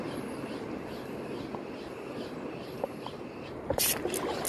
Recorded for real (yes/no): yes